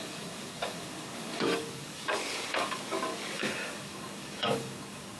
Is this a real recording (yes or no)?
no